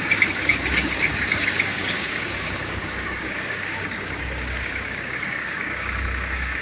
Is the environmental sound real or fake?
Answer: fake